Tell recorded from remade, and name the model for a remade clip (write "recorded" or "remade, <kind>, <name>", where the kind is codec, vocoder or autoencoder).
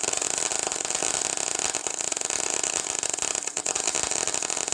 recorded